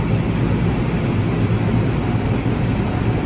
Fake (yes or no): no